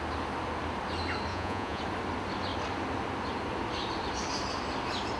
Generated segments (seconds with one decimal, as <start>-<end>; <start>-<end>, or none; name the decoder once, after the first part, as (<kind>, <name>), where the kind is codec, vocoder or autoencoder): 1.3-1.8 (vocoder, Vocos)